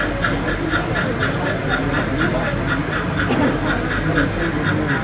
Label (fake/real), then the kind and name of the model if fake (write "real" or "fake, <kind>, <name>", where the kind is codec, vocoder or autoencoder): real